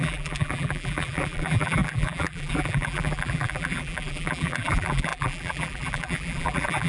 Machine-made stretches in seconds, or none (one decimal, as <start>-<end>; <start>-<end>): 0.0-6.9